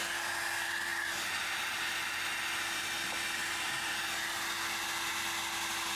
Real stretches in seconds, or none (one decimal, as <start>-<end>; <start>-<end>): 0.0-6.0